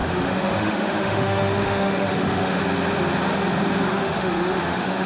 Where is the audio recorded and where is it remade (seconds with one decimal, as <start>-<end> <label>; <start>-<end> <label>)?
0.0-2.6 remade; 2.6-3.9 recorded; 3.9-5.1 remade